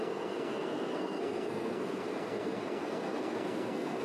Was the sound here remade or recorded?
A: remade